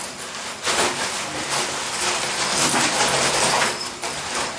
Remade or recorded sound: recorded